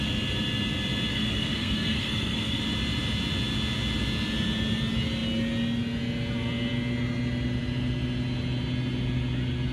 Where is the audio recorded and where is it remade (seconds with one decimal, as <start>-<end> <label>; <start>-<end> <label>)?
0.0-1.1 recorded; 1.1-2.6 remade; 2.6-9.7 recorded